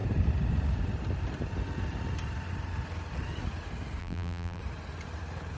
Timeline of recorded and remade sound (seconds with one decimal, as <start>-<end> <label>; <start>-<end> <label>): 0.0-4.0 recorded; 4.0-4.6 remade; 4.6-5.6 recorded